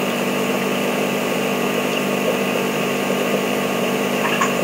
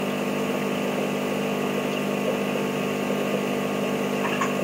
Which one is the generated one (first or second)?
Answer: first